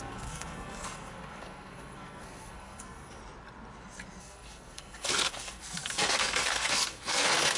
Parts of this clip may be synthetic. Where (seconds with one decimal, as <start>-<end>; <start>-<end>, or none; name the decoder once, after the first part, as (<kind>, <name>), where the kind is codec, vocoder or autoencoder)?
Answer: 0.0-3.2 (codec, SNAC); 4.2-7.6